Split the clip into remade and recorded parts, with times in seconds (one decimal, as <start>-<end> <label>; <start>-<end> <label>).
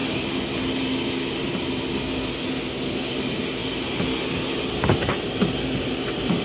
0.0-6.4 recorded